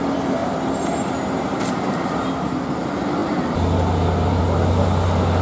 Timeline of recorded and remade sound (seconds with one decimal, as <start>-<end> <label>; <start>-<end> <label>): 0.0-5.4 recorded